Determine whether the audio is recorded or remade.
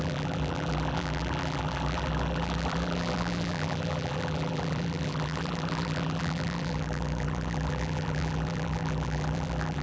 remade